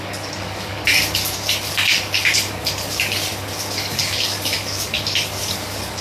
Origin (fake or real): fake